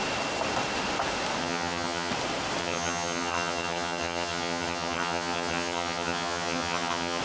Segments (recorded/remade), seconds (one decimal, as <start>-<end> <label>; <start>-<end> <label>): 0.0-1.4 recorded; 1.4-2.1 remade; 2.1-2.6 recorded; 2.6-7.2 remade